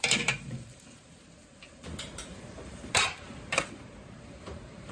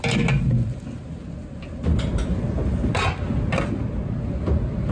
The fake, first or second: first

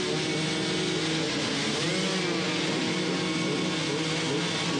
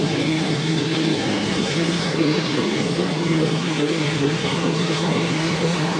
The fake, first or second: second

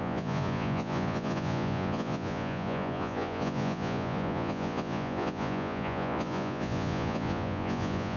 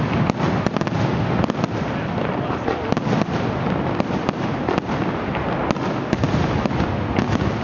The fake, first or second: first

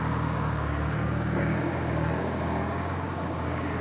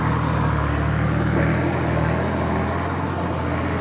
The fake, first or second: first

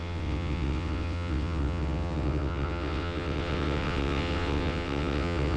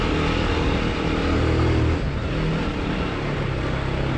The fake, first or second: first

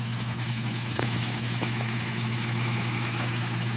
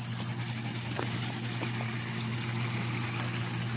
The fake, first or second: first